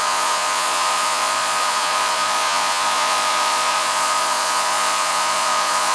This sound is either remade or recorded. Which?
remade